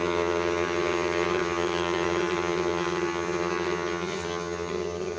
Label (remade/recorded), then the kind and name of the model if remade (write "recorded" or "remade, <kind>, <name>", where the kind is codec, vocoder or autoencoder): remade, vocoder, HiFi-GAN